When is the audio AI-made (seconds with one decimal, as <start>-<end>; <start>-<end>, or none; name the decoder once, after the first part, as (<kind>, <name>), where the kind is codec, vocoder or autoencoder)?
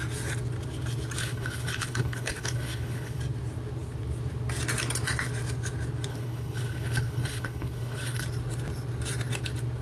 1.2-3.2 (codec, HILCodec); 6.1-8.2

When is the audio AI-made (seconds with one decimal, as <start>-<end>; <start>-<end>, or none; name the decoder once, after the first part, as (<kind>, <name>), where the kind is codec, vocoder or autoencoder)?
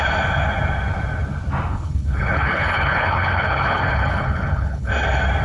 1.7-4.9 (codec, HILCodec)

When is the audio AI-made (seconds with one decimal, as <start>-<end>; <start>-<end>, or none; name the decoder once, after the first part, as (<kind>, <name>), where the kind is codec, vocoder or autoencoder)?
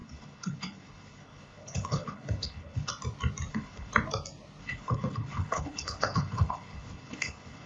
0.0-2.9 (codec, HILCodec); 3.5-3.9; 4.6-7.7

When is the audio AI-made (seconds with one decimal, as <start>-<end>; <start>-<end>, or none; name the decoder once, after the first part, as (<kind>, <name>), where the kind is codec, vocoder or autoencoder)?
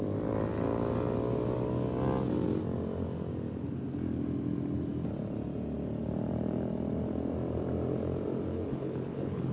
8.5-9.5 (codec, HILCodec)